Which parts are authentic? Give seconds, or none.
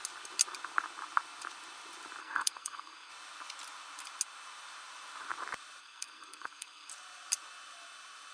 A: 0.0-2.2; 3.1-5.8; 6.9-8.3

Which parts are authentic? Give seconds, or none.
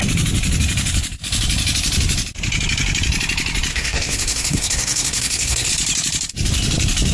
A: 0.0-3.7; 5.7-7.1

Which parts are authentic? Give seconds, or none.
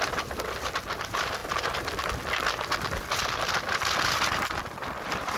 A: 0.0-5.4